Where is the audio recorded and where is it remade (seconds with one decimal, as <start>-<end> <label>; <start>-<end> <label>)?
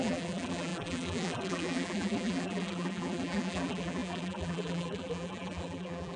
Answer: 0.0-6.2 remade